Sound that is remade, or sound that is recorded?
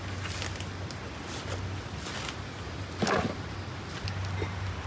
recorded